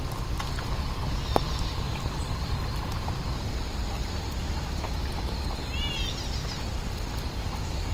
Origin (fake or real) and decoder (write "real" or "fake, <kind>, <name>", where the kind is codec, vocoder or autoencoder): real